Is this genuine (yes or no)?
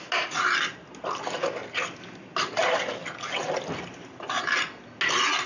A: yes